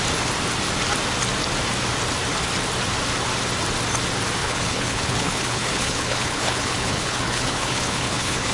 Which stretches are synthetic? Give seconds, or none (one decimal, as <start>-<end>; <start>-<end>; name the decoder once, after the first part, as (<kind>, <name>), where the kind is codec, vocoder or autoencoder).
4.4-8.5 (codec, HILCodec)